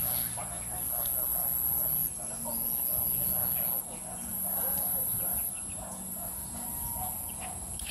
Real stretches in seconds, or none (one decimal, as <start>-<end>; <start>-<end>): 0.0-4.3; 6.7-7.9